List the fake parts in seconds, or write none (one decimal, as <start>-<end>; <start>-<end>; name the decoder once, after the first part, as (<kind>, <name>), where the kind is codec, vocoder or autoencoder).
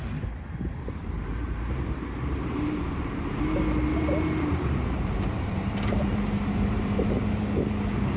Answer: 1.0-2.9 (vocoder, BigVGAN v2); 3.9-7.7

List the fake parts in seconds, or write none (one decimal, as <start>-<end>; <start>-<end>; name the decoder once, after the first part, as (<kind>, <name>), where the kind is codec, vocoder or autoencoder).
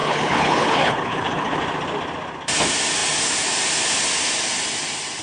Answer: 0.0-1.6 (codec, HILCodec)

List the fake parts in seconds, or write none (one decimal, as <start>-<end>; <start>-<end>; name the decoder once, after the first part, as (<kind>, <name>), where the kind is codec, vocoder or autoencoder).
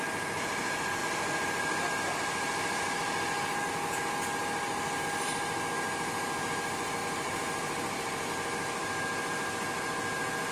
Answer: 7.0-8.3 (vocoder, BigVGAN v2)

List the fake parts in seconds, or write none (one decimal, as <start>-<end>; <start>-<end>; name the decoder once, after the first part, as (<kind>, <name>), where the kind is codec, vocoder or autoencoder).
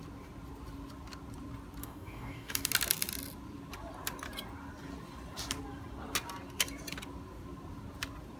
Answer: 1.8-2.7 (codec, DAC)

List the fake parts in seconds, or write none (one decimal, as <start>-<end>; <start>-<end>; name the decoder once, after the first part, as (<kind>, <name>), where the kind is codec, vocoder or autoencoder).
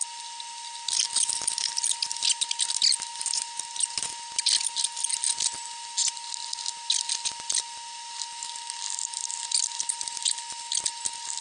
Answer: none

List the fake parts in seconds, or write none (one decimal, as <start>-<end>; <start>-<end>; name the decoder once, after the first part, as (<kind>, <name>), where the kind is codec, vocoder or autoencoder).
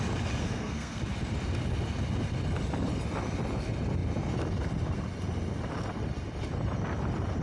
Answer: 0.4-1.0 (codec, SNAC)